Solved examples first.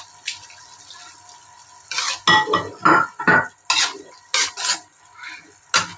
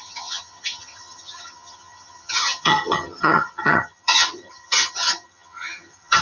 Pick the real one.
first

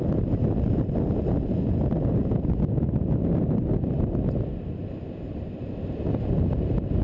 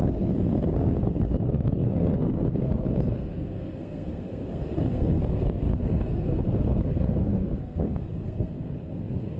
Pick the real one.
first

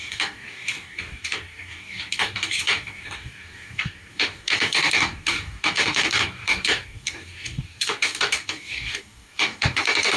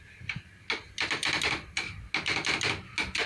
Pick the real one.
second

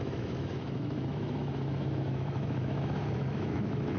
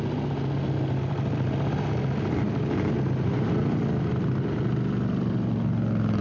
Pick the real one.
second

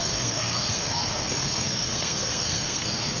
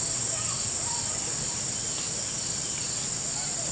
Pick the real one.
second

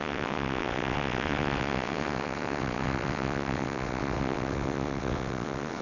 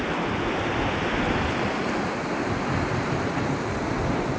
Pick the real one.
second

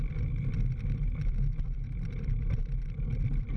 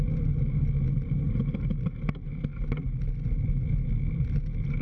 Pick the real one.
second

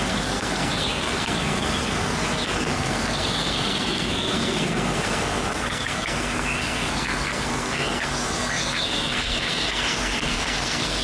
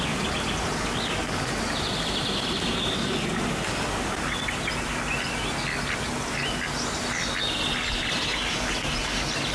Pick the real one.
second